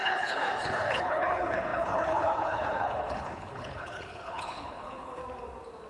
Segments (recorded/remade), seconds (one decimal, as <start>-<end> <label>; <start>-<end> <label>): 0.0-5.2 remade; 5.2-5.9 recorded

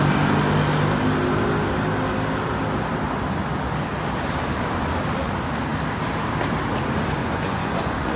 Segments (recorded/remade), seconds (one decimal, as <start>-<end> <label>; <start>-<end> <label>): 0.0-7.2 recorded; 7.2-8.2 remade

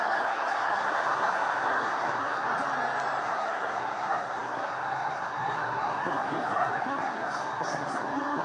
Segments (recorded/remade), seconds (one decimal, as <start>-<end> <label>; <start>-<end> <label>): 0.0-2.5 remade; 2.5-3.2 recorded; 3.2-8.4 remade

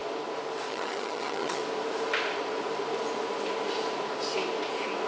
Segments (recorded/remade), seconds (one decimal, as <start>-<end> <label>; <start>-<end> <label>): 0.0-0.7 recorded; 0.7-1.6 remade; 1.6-5.1 recorded

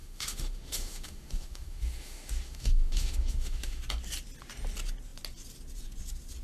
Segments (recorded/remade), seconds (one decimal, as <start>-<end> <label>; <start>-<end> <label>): 0.0-3.8 remade; 3.8-6.4 recorded